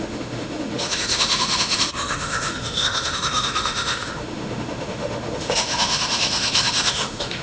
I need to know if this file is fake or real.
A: fake